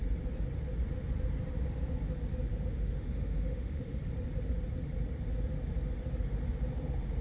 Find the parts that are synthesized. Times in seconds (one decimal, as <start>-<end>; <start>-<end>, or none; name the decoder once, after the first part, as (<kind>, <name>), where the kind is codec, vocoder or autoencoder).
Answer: 2.5-4.0 (autoencoder, DAC-VAE)